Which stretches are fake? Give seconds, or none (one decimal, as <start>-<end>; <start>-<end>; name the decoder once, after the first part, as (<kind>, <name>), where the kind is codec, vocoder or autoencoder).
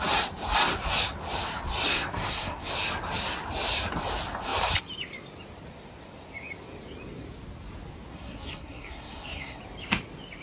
1.9-2.7 (codec, SNAC); 8.1-9.6